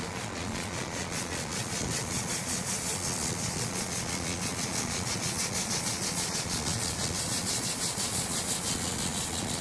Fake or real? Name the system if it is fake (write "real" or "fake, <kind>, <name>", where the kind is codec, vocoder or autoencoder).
fake, vocoder, Vocos